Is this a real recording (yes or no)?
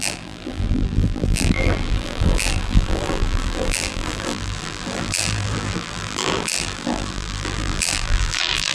no